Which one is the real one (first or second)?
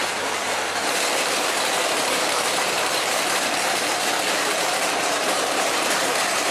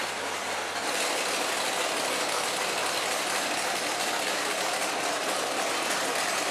second